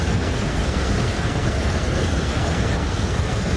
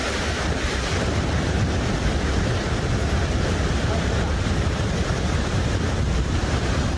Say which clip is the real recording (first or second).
second